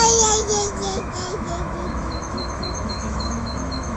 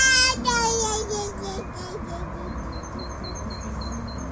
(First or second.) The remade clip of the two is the first